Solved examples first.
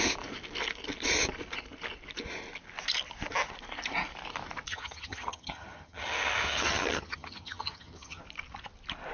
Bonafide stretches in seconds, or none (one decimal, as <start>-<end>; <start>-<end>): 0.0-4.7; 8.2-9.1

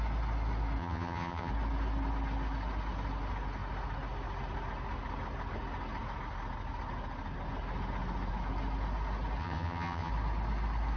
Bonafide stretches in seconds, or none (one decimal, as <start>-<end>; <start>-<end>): 0.0-0.8; 1.5-9.4; 10.1-11.0

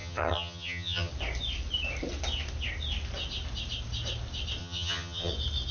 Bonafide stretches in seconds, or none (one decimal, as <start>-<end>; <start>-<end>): 1.1-4.6; 5.3-5.7

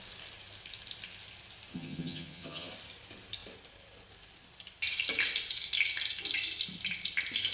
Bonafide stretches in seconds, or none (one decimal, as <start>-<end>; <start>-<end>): 0.0-1.7; 2.7-7.5